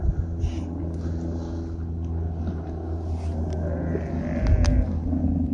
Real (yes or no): yes